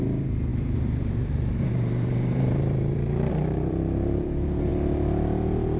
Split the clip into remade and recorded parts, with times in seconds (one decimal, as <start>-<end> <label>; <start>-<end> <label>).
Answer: 0.0-4.7 remade; 4.7-5.8 recorded